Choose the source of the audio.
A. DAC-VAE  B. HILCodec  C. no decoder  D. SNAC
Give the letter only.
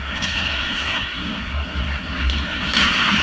D